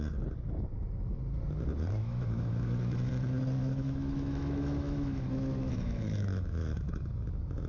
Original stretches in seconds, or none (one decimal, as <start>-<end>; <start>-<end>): 0.0-2.0; 3.1-3.6; 7.3-7.7

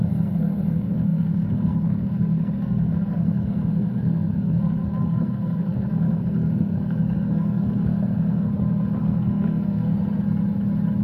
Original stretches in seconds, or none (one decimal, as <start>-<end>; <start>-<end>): 8.5-9.0; 9.9-11.0

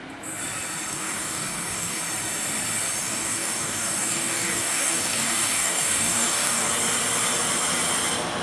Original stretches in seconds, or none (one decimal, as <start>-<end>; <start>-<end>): 0.0-0.9; 2.0-3.0; 6.7-8.4

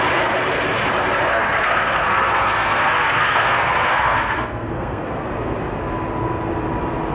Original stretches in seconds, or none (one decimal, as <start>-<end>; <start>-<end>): 0.0-1.3; 5.1-7.1

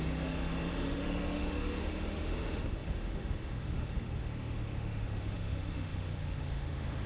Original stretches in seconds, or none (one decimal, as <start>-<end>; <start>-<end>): none